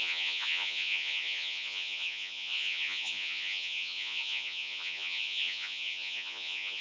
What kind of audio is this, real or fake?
fake